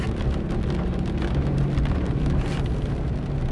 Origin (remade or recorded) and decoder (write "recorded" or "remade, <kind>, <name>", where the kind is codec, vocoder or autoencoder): recorded